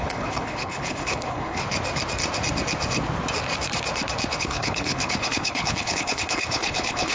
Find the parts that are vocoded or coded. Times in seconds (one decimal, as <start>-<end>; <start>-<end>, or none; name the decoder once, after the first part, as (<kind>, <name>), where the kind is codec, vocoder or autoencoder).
0.0-1.6 (codec, HILCodec); 4.4-7.1